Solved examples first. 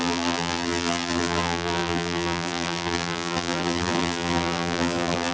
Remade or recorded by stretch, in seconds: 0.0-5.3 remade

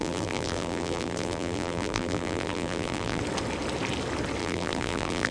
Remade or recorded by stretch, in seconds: 0.0-3.2 remade; 3.2-4.4 recorded; 4.4-5.3 remade

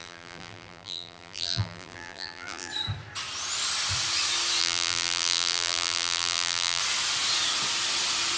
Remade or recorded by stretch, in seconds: 0.0-2.7 remade; 2.7-4.6 recorded; 4.6-6.8 remade; 6.8-8.4 recorded

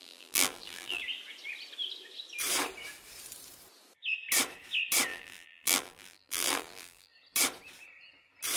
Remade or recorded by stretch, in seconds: 0.0-1.0 remade; 1.0-5.1 recorded; 5.1-7.1 remade; 7.1-8.6 recorded

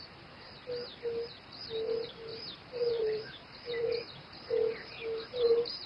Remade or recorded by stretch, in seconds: 0.0-2.3 recorded; 2.3-5.9 remade